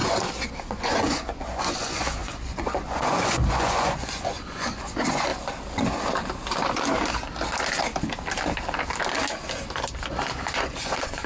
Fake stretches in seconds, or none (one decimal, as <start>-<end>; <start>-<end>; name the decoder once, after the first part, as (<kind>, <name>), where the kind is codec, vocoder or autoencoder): 0.6-5.3 (vocoder, Vocos); 10.1-11.3